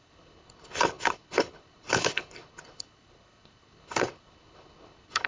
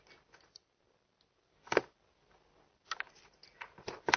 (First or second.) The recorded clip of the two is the second